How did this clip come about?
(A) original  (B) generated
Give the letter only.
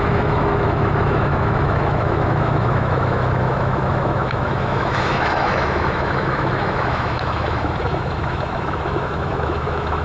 B